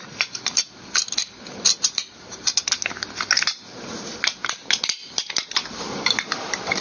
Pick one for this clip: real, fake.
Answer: real